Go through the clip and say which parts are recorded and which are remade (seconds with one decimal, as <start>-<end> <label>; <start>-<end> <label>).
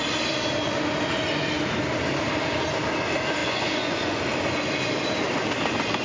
0.0-3.4 recorded; 3.4-4.2 remade; 4.2-6.0 recorded